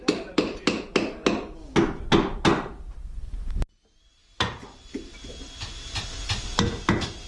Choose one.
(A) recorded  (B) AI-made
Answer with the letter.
A